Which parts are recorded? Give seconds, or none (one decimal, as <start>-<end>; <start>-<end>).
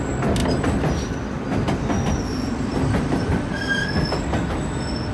0.0-5.1